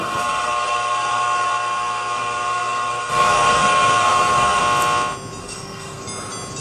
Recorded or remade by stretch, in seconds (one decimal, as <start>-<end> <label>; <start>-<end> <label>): 0.0-4.6 remade; 4.6-5.4 recorded; 5.4-6.0 remade; 6.0-6.6 recorded